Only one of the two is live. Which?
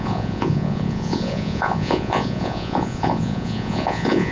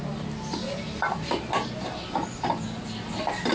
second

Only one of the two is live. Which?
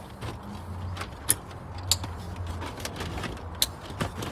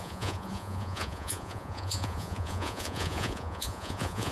first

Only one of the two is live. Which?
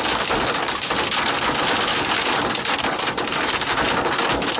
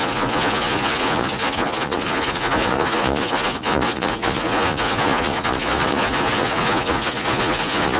first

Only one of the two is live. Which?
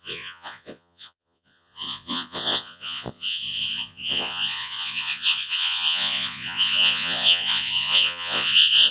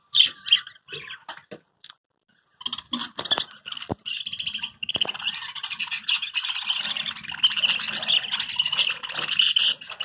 second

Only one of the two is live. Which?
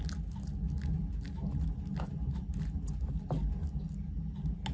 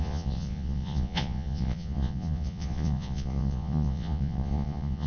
first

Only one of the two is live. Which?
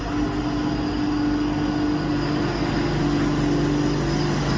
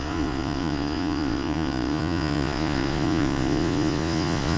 first